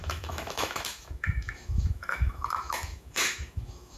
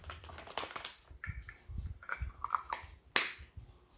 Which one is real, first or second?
second